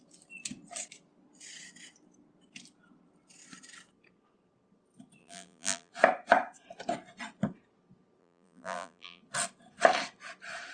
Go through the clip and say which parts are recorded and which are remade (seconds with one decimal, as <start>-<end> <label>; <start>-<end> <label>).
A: 0.0-5.2 recorded; 5.2-5.9 remade; 5.9-8.2 recorded; 8.2-9.2 remade; 9.2-10.7 recorded